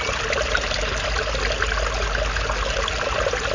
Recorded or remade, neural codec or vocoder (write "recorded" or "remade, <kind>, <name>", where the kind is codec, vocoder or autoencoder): recorded